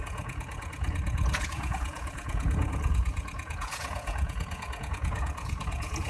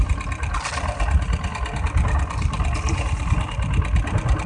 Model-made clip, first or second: first